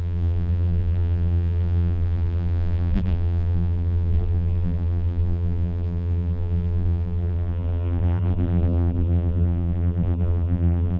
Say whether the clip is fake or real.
fake